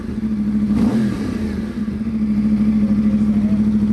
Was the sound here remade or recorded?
recorded